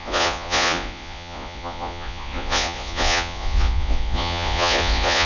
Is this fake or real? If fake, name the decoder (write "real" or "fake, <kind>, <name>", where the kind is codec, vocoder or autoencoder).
fake, vocoder, Vocos